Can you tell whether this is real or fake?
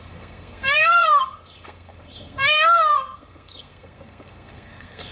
fake